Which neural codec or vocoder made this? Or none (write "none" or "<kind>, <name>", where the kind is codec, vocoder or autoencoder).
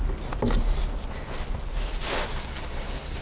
none